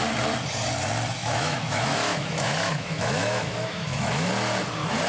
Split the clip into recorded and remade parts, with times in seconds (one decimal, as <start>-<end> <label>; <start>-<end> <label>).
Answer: 0.0-1.2 recorded; 1.2-4.3 remade; 4.3-5.1 recorded